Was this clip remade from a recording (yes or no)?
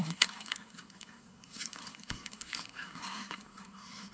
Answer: yes